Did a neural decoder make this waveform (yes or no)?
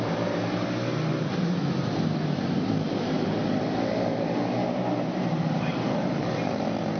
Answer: yes